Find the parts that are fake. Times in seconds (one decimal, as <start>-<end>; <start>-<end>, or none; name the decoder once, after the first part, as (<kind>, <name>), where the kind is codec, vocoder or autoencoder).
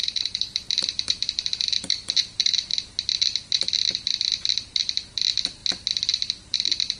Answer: 0.0-2.7 (vocoder, BigVGAN v2); 3.6-5.6; 6.3-7.0